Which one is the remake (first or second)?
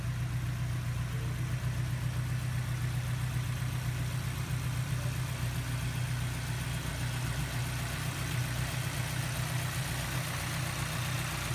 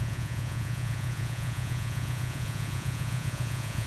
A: second